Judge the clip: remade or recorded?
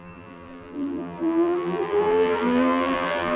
remade